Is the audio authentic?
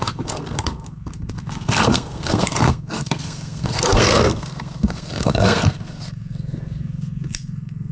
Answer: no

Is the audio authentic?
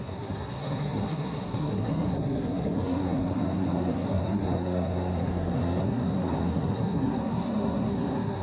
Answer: no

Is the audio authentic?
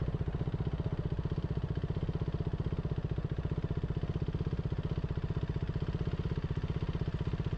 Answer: yes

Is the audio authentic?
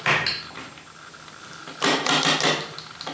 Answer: yes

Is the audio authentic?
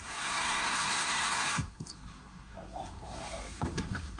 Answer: no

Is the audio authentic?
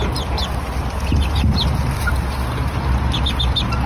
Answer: yes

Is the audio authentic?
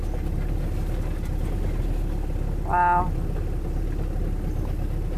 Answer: yes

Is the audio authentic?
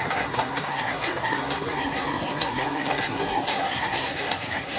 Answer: no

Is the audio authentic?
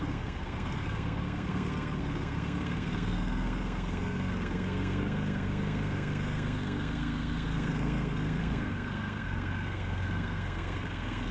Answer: no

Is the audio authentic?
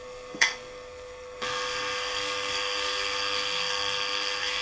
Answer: no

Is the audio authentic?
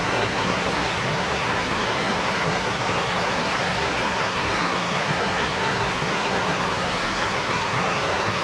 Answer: no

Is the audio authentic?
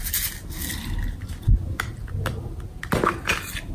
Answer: yes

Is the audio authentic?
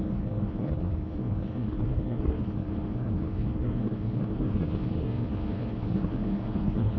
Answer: no